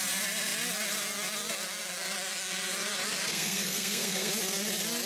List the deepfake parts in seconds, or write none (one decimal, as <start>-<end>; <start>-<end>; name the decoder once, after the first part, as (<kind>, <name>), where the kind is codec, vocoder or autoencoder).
3.3-4.3 (codec, SNAC)